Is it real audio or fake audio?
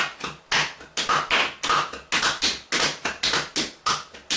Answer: real